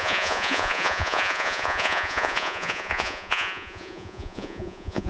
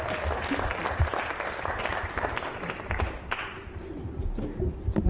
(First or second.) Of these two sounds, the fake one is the first